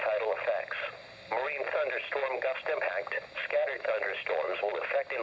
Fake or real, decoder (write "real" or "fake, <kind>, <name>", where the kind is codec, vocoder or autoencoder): real